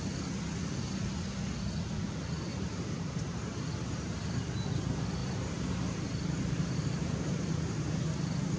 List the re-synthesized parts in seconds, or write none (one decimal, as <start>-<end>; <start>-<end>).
2.5-4.4; 5.2-8.0